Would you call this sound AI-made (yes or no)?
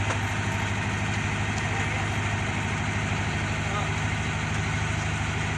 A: no